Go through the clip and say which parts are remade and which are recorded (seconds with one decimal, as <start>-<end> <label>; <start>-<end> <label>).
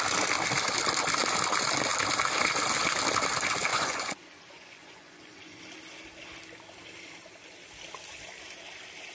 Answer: 0.0-3.7 recorded; 3.7-5.6 remade; 5.6-9.1 recorded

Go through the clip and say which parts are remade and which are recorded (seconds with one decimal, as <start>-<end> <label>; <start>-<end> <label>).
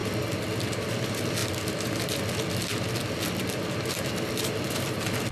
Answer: 0.0-1.4 recorded; 1.4-2.0 remade; 2.0-2.7 recorded; 2.7-5.3 remade